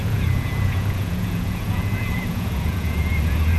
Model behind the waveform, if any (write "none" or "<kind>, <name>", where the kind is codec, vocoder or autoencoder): vocoder, Vocos